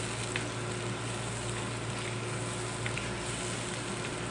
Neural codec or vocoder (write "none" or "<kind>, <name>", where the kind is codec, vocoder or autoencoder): none